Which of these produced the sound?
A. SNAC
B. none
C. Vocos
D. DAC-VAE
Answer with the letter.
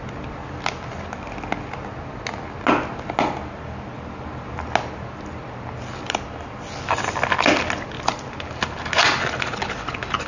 B